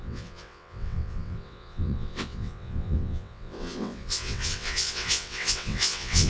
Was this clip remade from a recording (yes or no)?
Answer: yes